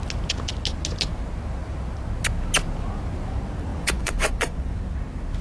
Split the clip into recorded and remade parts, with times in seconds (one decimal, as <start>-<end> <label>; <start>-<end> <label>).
0.0-3.7 recorded; 3.7-4.8 remade; 4.8-5.4 recorded